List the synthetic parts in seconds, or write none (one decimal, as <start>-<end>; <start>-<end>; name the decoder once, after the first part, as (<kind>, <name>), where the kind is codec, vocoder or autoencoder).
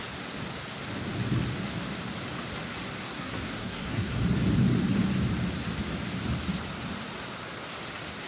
3.0-4.2 (codec, SNAC)